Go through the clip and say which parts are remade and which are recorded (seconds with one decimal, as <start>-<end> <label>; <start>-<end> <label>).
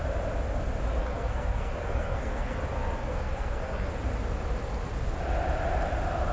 0.0-1.0 recorded; 1.0-2.6 remade; 2.6-3.0 recorded; 3.0-3.9 remade; 3.9-6.3 recorded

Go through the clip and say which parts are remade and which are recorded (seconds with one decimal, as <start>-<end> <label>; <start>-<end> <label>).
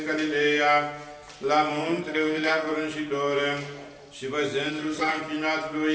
0.0-1.7 recorded; 1.7-2.7 remade; 2.7-4.7 recorded; 4.7-5.2 remade; 5.2-5.9 recorded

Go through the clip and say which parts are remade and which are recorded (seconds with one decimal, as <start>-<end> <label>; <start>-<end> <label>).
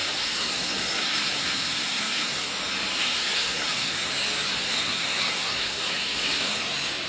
0.0-2.5 remade; 2.5-3.0 recorded; 3.0-4.1 remade; 4.1-4.5 recorded; 4.5-6.6 remade; 6.6-7.1 recorded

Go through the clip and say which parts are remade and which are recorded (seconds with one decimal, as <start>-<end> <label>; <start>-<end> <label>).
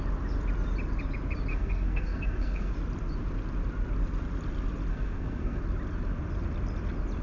0.0-1.5 recorded; 1.5-2.7 remade; 2.7-4.9 recorded; 4.9-5.6 remade; 5.6-7.2 recorded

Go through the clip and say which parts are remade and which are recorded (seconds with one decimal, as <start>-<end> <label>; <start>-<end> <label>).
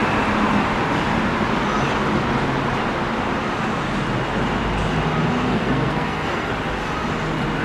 0.0-5.5 recorded; 5.5-6.5 remade; 6.5-7.6 recorded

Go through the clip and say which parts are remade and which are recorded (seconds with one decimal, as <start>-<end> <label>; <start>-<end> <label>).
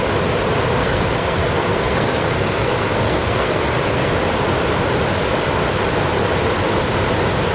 0.0-0.8 recorded; 0.8-4.1 remade; 4.1-7.5 recorded